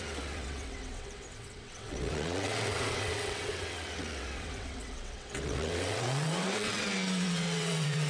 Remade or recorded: remade